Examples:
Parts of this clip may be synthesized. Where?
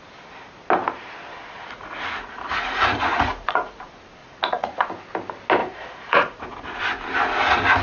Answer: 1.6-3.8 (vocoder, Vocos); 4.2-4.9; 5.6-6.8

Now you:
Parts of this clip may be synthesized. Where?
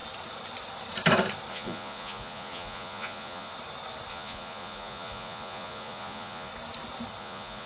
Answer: 1.5-3.5 (vocoder, Vocos); 4.1-6.5; 7.2-7.7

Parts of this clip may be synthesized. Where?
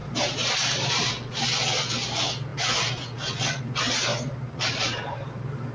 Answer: 0.0-1.1 (vocoder, BigVGAN v2); 4.1-5.3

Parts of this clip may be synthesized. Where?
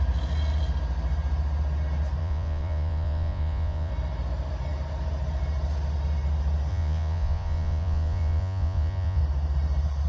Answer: 2.2-3.9 (vocoder, Vocos); 6.7-9.2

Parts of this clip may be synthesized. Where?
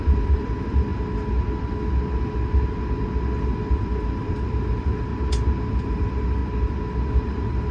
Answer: 0.0-0.9 (vocoder, BigVGAN v2); 3.7-5.1; 5.7-6.4; 7.1-7.7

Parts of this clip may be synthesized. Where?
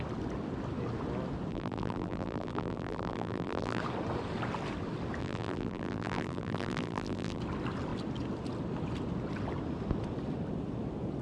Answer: 1.5-3.8 (vocoder, BigVGAN v2); 5.2-7.4